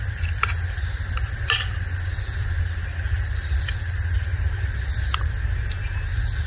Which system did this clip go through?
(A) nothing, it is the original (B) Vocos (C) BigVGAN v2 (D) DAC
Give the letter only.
A